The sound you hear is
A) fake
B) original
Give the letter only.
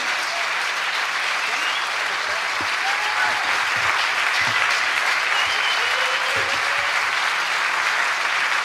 B